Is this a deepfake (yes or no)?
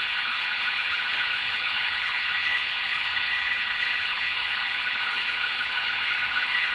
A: yes